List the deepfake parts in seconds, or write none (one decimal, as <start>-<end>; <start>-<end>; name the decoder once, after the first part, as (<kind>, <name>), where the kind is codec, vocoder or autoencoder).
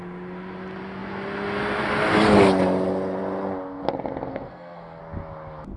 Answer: 4.3-5.0 (codec, SNAC)